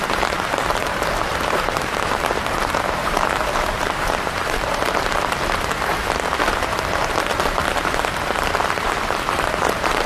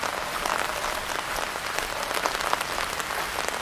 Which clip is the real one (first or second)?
second